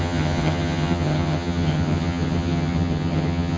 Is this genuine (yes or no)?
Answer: no